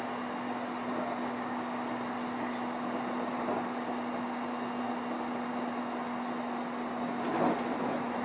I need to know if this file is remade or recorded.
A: recorded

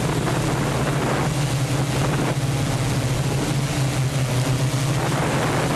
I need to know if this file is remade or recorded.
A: recorded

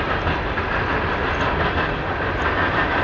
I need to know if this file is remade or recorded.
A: recorded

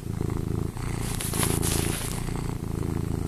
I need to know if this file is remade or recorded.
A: recorded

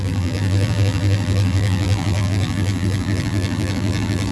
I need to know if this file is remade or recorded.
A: remade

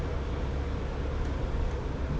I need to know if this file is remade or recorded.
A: recorded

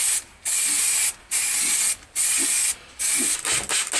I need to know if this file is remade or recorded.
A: recorded